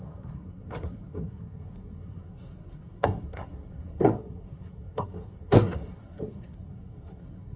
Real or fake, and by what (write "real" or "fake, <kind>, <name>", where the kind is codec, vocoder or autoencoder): fake, codec, SNAC